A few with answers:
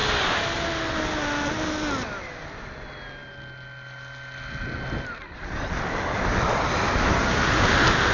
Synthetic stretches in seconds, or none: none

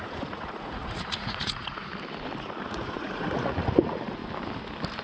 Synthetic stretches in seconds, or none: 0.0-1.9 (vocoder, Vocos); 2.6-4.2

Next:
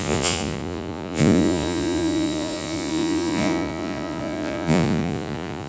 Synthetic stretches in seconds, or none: 0.0-5.7 (vocoder, Vocos)